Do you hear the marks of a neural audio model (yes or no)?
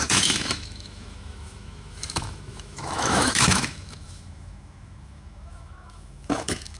yes